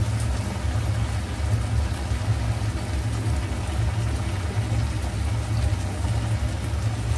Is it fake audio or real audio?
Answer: real